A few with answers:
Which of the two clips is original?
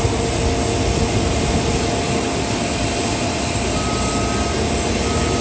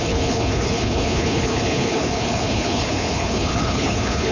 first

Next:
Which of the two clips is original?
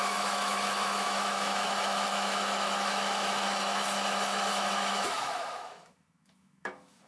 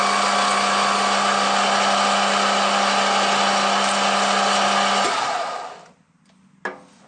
second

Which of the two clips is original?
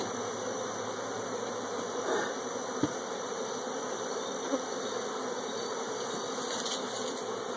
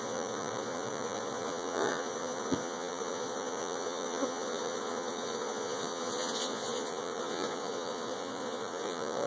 first